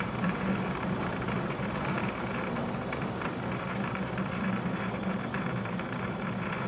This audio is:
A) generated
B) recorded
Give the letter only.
A